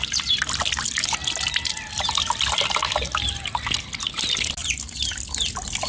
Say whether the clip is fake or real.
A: real